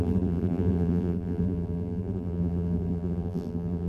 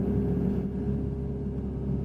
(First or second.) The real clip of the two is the second